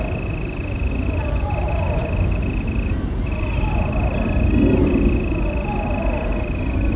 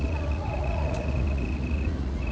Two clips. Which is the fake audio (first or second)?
second